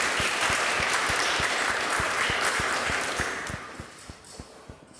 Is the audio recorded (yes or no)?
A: no